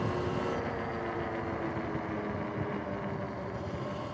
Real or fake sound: real